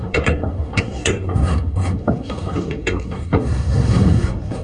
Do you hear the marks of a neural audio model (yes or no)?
yes